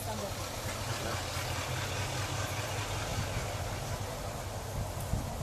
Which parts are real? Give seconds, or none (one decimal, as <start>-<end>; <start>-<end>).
0.0-5.4